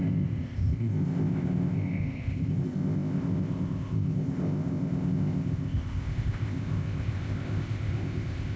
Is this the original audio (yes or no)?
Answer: no